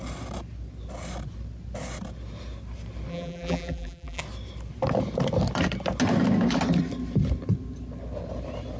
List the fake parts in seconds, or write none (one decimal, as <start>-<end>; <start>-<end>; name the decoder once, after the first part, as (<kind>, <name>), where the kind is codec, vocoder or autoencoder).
3.1-4.2 (vocoder, BigVGAN v2)